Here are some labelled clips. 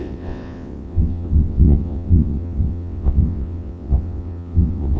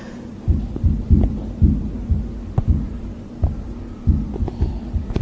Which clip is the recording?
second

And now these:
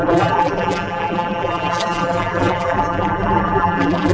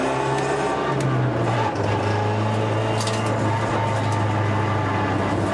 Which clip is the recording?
second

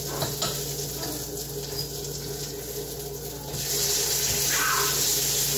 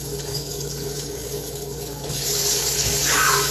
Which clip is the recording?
first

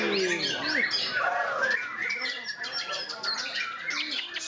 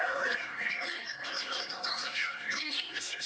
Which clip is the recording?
first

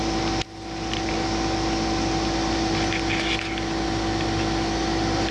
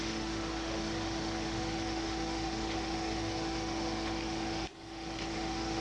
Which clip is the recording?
first